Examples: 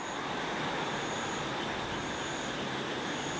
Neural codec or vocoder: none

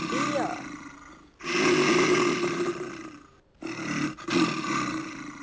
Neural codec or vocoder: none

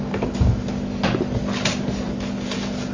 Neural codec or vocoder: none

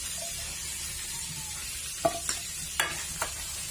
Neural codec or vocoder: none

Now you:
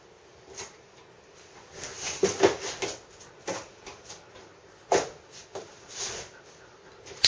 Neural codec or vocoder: none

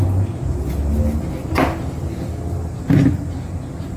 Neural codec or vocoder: none